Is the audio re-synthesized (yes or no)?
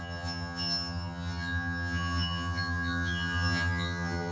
yes